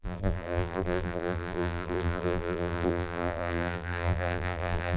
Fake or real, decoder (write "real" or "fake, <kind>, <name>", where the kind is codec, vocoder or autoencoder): fake, vocoder, BigVGAN v2